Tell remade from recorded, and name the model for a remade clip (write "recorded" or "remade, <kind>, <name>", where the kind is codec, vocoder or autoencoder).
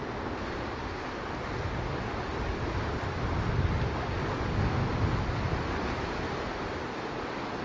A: recorded